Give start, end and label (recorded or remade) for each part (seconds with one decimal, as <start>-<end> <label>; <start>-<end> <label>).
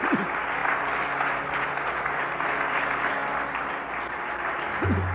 0.0-5.1 recorded